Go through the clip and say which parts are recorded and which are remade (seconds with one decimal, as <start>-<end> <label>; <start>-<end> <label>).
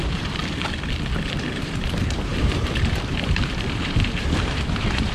0.0-0.4 remade; 0.4-1.5 recorded; 1.5-5.1 remade